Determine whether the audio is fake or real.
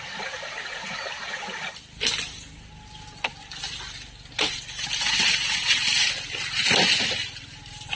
real